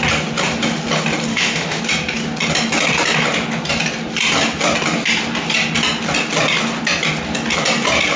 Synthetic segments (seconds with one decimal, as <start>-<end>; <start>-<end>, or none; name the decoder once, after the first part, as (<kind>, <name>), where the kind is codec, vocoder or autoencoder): 1.3-1.8 (autoencoder, DAC-VAE)